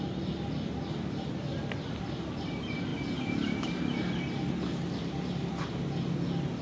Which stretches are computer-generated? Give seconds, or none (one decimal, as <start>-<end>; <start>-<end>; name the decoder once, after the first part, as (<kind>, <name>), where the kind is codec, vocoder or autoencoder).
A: none